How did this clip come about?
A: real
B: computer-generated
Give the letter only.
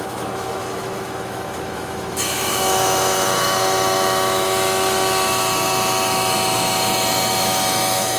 B